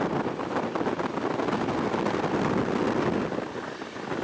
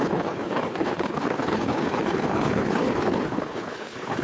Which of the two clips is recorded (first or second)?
first